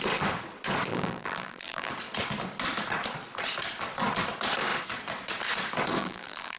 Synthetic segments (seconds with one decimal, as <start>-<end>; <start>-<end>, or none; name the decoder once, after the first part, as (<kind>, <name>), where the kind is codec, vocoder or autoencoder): 0.9-1.9 (vocoder, BigVGAN v2); 6.0-6.6